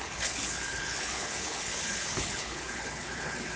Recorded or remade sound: remade